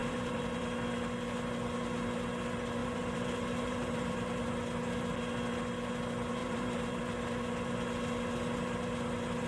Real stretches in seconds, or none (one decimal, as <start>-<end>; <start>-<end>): 0.6-2.8; 4.5-6.4; 7.0-9.5